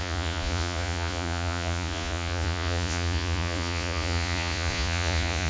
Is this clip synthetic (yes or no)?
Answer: yes